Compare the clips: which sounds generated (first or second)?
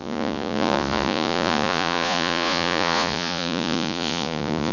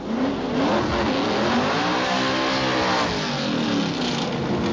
first